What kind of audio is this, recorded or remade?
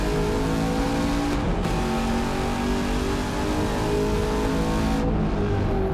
recorded